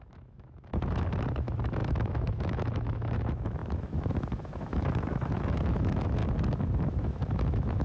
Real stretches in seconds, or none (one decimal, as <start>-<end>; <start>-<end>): 6.2-6.9